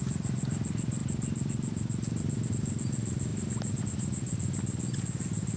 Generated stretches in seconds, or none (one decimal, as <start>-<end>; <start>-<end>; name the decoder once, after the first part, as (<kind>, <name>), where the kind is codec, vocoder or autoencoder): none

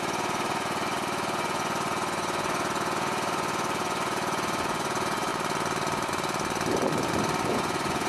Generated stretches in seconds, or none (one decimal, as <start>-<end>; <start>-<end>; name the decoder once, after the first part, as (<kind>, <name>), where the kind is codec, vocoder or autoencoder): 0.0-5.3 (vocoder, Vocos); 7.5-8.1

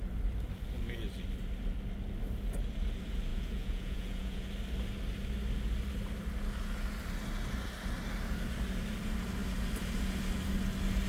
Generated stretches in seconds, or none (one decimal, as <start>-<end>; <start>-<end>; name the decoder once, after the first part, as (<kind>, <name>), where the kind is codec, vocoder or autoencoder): 3.3-4.5 (vocoder, Vocos)

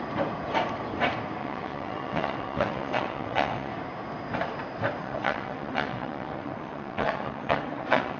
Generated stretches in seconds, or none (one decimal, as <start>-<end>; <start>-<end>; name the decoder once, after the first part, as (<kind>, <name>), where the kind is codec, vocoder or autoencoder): 1.4-3.7 (vocoder, WaveNeXt); 5.0-8.2